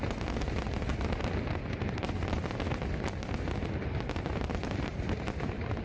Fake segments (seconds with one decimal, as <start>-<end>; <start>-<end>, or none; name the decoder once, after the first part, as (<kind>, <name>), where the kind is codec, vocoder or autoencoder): 4.9-5.8 (vocoder, BigVGAN v2)